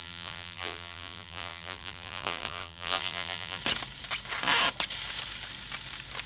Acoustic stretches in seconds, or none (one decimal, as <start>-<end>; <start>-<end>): 3.6-6.3